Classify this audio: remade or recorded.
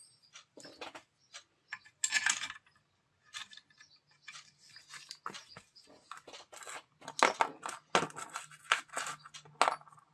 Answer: recorded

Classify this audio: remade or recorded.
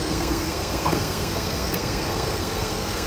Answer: remade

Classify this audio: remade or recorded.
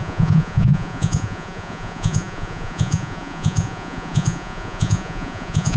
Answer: remade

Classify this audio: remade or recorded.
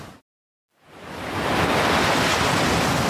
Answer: recorded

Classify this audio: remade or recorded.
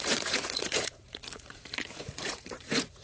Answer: remade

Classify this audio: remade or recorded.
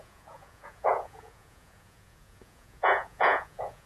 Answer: remade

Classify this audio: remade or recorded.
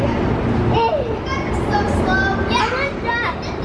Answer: recorded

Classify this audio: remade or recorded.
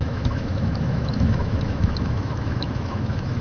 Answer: remade